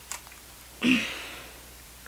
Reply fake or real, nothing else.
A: fake